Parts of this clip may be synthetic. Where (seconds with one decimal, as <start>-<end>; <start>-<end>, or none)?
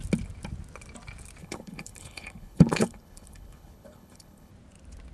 1.4-4.5